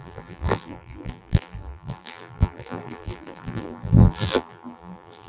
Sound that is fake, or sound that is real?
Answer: fake